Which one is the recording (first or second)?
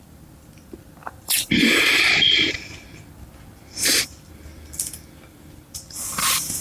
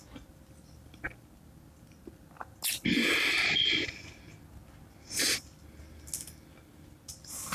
second